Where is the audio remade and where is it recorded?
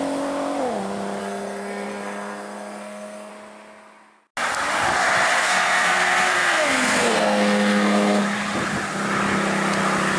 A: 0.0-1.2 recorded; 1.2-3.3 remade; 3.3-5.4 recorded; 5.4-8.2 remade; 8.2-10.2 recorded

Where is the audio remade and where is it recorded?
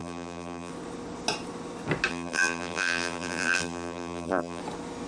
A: 0.0-0.7 remade; 0.7-2.1 recorded; 2.1-4.6 remade; 4.6-5.1 recorded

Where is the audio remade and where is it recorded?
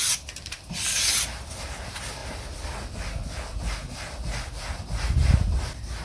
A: 0.0-6.0 recorded